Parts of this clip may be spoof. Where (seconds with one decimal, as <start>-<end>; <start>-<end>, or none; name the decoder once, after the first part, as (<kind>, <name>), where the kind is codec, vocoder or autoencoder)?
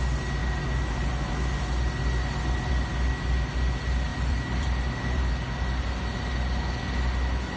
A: 4.1-5.3 (vocoder, BigVGAN v2)